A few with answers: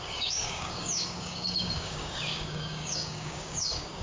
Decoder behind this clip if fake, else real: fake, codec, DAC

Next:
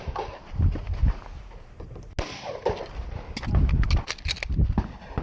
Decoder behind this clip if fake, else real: real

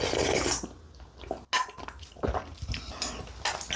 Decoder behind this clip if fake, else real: real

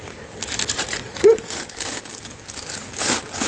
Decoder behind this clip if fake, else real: fake, codec, DAC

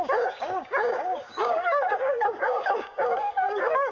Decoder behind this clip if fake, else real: fake, codec, DAC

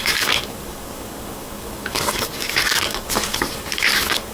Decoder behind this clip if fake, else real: fake, codec, DAC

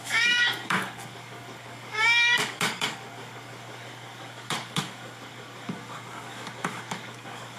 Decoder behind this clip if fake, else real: fake, codec, DAC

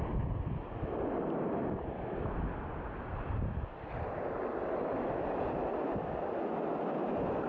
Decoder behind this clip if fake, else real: real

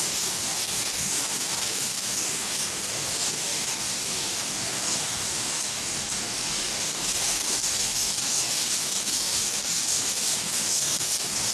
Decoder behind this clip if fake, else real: fake, codec, DAC